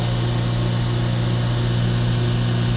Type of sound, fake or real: real